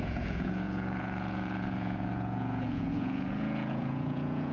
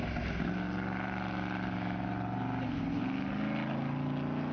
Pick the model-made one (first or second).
first